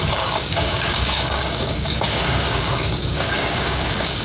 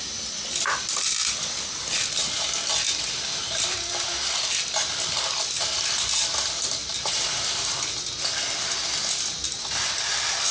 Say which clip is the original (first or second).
second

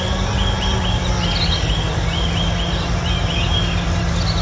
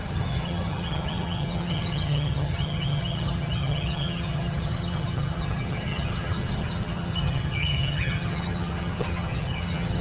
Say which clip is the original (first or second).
first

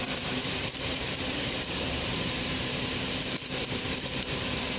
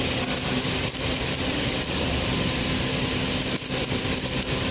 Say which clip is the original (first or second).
second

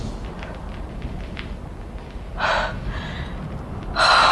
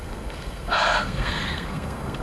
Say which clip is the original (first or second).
first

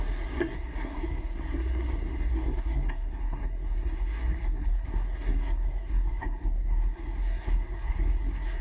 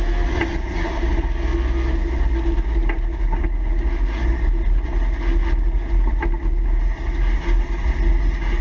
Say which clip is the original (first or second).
second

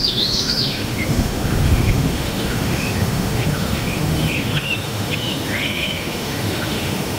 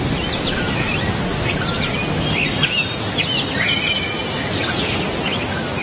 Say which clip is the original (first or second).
second